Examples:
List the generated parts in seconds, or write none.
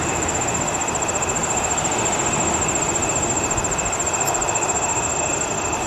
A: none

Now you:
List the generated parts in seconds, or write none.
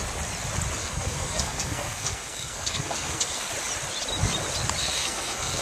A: 0.8-3.5 (codec, SNAC); 4.8-5.6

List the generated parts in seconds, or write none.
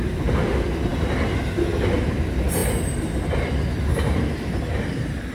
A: none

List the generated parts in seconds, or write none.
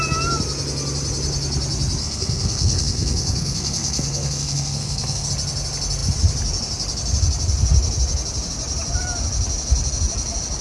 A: 2.0-5.3 (codec, SNAC)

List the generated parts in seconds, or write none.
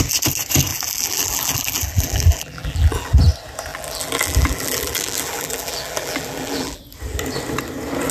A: 0.7-3.2 (vocoder, BigVGAN v2); 3.7-6.8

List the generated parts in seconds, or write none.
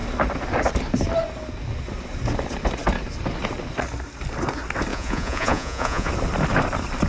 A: 4.9-6.1 (vocoder, Vocos)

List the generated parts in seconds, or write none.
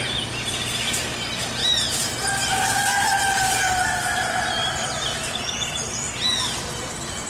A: 1.6-3.7 (vocoder, BigVGAN v2); 4.6-5.3; 5.9-6.8